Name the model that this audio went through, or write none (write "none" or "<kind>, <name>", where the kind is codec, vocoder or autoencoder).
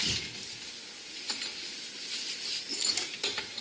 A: none